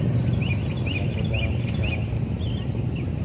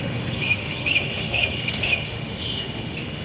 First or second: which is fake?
second